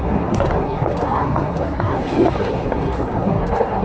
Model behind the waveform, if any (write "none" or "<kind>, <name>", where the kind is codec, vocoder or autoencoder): codec, SNAC